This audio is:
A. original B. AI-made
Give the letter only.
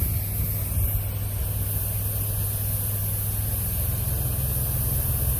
A